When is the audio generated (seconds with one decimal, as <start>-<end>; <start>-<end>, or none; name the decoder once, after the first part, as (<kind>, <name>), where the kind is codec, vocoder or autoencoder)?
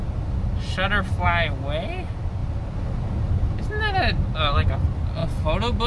none